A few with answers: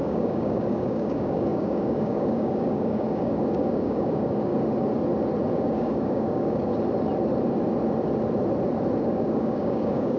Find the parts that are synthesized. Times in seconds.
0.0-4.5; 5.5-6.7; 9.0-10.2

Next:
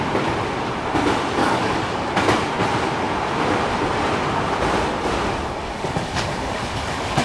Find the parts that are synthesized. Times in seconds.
1.4-2.1; 5.6-7.2

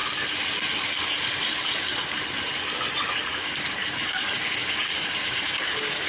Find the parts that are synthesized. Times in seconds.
3.3-6.1

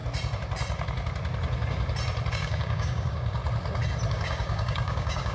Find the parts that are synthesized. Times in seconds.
2.3-3.4; 4.1-5.3

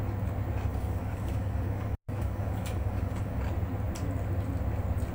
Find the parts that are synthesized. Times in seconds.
0.7-3.4